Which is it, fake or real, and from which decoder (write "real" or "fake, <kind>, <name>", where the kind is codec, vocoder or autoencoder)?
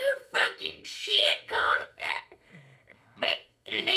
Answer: fake, codec, SNAC